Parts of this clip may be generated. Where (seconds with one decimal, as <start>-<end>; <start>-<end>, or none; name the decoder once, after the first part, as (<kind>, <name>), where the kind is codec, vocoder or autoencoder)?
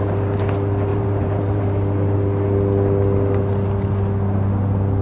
0.9-1.6 (vocoder, BigVGAN v2)